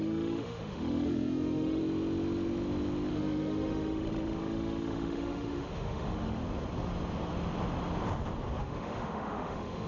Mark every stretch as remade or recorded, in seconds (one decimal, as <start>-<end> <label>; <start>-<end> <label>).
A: 0.0-1.8 remade; 1.8-3.1 recorded; 3.1-6.4 remade; 6.4-8.6 recorded; 8.6-9.9 remade